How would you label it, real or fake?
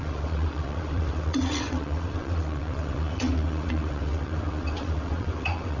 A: fake